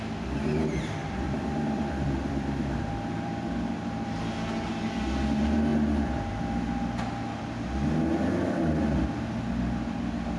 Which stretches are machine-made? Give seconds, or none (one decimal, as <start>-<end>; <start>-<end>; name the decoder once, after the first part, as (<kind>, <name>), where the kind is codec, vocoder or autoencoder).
1.0-4.2 (vocoder, BigVGAN v2)